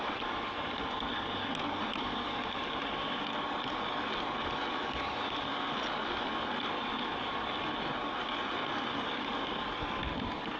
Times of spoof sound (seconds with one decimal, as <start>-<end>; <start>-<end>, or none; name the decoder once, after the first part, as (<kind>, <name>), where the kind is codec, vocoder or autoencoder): none